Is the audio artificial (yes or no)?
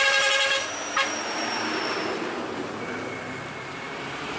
no